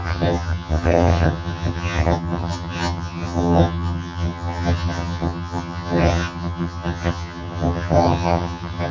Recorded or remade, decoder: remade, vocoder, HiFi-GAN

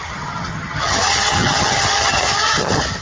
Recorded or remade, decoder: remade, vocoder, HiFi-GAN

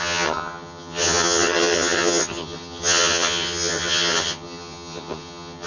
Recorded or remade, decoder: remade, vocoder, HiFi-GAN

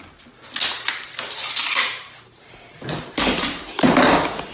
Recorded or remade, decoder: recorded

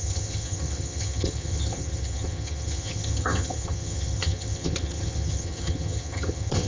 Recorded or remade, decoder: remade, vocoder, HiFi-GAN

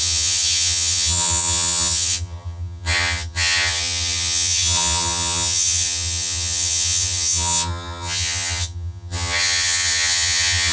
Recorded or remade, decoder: remade, vocoder, HiFi-GAN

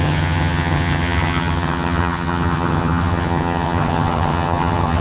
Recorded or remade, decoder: remade, vocoder, HiFi-GAN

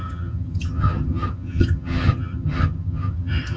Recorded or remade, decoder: remade, vocoder, HiFi-GAN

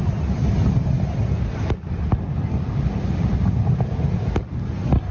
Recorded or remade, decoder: recorded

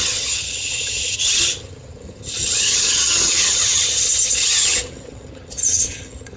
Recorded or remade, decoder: remade, vocoder, HiFi-GAN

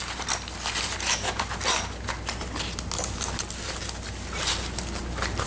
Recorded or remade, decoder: recorded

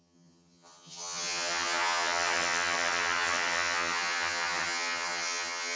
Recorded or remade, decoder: remade, vocoder, HiFi-GAN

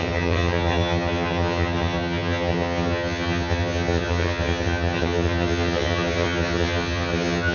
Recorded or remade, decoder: remade, vocoder, HiFi-GAN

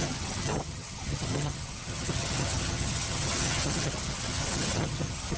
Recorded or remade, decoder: remade, vocoder, HiFi-GAN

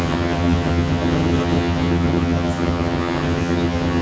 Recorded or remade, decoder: remade, vocoder, HiFi-GAN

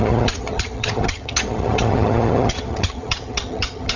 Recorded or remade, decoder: remade, vocoder, HiFi-GAN